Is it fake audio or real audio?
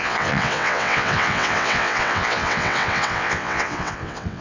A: fake